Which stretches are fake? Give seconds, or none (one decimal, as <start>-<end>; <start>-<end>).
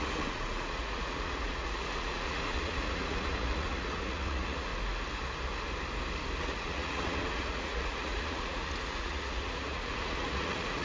0.0-4.7; 6.4-10.8